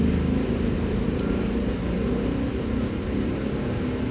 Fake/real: real